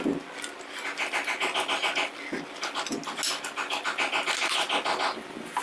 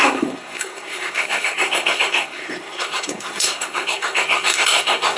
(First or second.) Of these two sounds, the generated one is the second